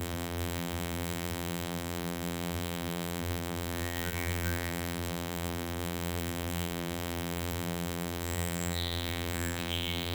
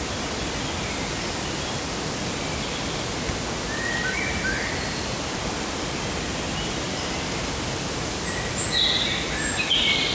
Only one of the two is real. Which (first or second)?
second